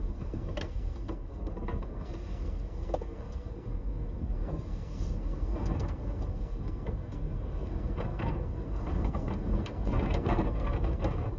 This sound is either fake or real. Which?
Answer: fake